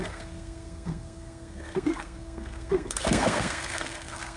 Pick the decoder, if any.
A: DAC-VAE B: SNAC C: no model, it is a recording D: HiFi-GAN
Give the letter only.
B